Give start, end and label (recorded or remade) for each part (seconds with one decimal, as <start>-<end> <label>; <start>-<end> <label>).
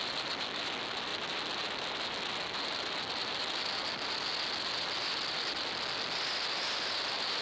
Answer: 0.0-7.4 recorded